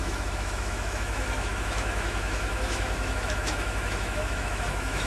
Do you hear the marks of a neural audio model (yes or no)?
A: yes